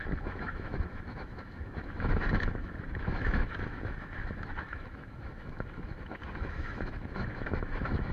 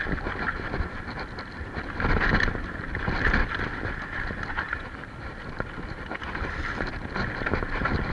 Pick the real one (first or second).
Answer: second